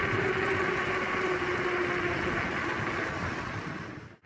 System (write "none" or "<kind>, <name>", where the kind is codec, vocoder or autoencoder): none